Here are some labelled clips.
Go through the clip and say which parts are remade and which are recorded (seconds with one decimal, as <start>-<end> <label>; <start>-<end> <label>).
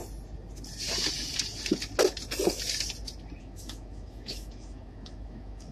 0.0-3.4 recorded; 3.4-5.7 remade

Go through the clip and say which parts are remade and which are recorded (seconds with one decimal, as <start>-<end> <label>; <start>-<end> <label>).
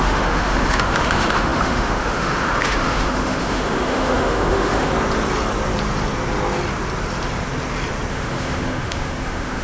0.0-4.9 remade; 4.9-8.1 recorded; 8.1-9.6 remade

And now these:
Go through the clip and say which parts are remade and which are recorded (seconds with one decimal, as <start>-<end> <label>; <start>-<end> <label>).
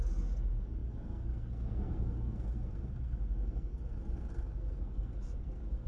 0.0-5.9 remade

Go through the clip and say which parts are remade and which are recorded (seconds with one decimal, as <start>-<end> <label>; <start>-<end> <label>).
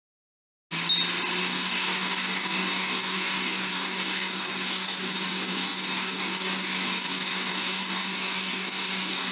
0.0-1.4 recorded; 1.4-9.3 remade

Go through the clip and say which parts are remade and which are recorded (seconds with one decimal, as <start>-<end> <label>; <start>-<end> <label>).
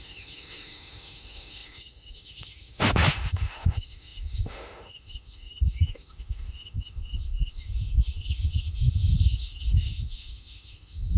0.0-11.2 remade